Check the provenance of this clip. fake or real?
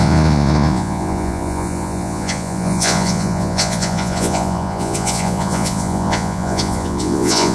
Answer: fake